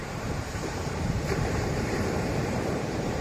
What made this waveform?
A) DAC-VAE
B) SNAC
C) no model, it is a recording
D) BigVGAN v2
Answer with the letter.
D